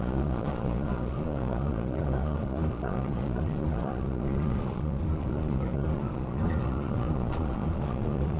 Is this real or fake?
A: fake